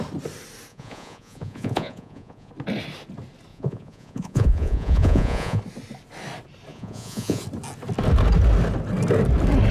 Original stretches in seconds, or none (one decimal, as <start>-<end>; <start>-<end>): 0.0-0.7; 2.5-3.5; 5.6-6.7; 7.4-9.7